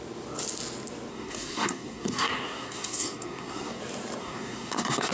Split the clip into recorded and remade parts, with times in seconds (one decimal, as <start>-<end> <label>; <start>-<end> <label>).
0.0-1.1 recorded; 1.1-3.8 remade; 3.8-4.2 recorded; 4.2-5.1 remade